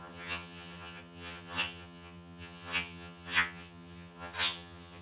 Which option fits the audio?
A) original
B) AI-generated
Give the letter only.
B